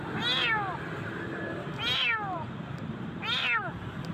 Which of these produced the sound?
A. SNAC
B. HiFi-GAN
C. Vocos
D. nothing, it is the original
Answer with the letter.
D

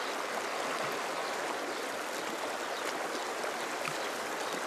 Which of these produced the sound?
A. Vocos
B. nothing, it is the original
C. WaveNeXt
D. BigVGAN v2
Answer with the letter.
B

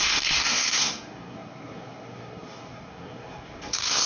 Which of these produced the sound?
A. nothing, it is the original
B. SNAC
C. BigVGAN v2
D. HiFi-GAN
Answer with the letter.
B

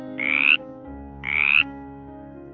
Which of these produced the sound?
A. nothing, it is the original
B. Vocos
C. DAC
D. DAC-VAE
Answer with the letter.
C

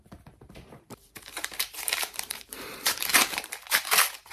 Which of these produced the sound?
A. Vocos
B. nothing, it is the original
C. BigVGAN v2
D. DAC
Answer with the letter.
C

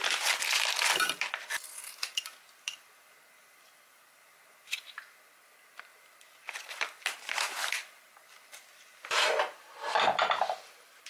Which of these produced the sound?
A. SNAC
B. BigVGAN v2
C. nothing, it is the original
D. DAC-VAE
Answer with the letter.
B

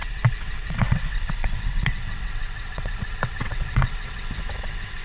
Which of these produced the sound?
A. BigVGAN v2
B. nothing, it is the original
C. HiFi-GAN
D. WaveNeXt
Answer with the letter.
D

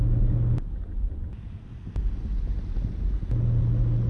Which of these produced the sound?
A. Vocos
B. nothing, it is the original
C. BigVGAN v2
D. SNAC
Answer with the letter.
B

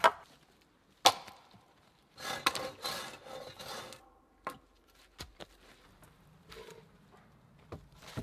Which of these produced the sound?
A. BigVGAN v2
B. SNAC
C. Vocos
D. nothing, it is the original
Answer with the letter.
D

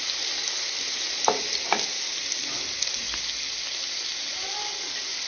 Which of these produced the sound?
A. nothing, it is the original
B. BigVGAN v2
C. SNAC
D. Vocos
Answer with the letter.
A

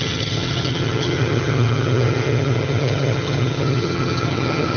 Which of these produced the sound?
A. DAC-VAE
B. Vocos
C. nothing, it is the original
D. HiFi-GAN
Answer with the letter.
D